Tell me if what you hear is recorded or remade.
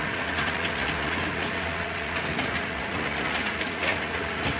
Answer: remade